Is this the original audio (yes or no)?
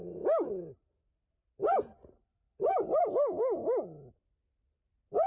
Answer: yes